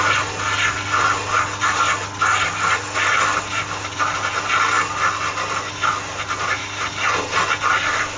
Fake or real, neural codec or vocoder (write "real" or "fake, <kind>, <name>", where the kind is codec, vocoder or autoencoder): real